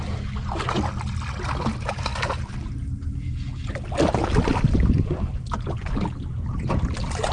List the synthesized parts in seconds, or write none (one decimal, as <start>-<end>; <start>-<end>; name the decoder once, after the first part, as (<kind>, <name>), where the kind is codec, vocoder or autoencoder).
none